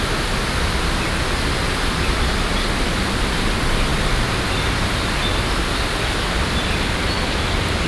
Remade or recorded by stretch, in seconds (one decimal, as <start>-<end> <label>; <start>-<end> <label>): 0.0-7.9 recorded